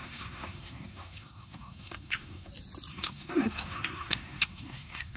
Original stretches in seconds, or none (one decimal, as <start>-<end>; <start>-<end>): 2.5-2.9